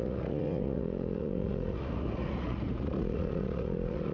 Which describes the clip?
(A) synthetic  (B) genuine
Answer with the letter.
A